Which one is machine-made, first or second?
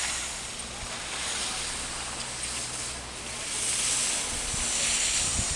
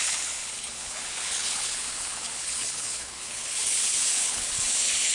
second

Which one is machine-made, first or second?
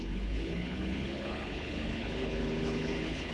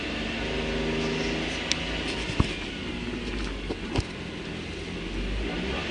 first